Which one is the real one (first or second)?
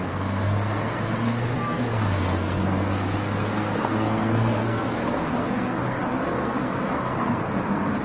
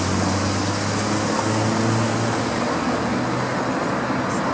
second